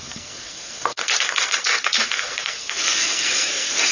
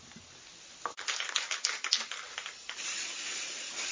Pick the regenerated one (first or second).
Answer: first